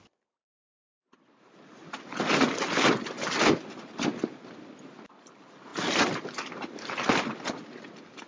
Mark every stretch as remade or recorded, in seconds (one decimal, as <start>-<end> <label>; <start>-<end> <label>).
0.0-8.3 recorded

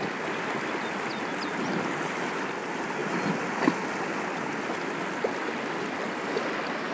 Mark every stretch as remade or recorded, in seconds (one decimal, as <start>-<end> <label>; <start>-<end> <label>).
0.0-6.9 recorded

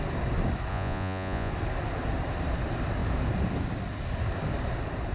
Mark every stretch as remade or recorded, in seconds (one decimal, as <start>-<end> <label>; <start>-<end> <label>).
0.0-0.7 recorded; 0.7-1.5 remade; 1.5-5.1 recorded

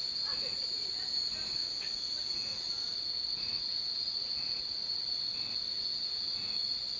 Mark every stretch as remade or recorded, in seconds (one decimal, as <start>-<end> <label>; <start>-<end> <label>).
0.0-1.6 recorded; 1.6-4.8 remade; 4.8-5.9 recorded; 5.9-7.0 remade

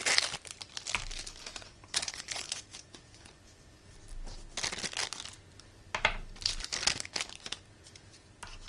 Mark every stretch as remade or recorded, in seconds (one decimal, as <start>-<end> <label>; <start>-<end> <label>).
0.0-1.5 recorded; 1.5-3.9 remade; 3.9-8.7 recorded

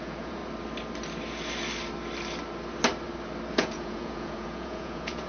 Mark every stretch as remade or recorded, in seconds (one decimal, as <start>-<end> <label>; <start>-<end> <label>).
0.0-0.4 remade; 0.4-3.5 recorded; 3.5-5.3 remade

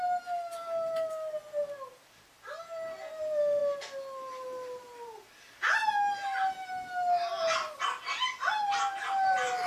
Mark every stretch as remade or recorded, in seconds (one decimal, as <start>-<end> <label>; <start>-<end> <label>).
0.0-9.7 recorded

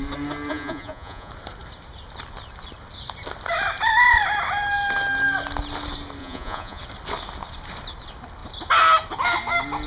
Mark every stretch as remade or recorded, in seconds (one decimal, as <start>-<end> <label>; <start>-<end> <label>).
0.0-0.5 recorded; 0.5-1.3 remade; 1.3-6.2 recorded; 6.2-6.8 remade; 6.8-9.9 recorded